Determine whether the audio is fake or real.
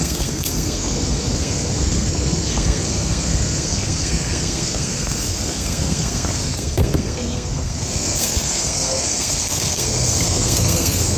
fake